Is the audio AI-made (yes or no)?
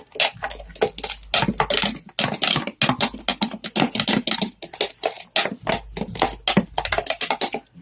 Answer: no